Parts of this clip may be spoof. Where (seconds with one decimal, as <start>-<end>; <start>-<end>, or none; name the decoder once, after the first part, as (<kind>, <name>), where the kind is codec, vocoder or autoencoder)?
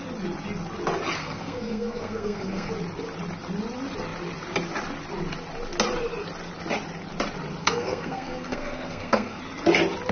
1.2-2.7 (codec, SNAC); 7.6-9.4